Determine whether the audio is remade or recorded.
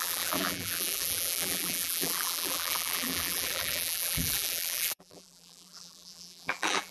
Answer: remade